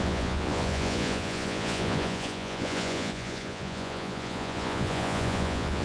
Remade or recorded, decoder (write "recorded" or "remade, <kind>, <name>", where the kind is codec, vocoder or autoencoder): remade, vocoder, Vocos